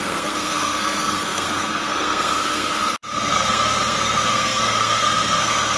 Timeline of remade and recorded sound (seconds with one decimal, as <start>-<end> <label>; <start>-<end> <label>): 0.0-5.8 remade